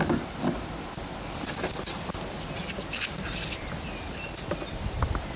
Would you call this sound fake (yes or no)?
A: no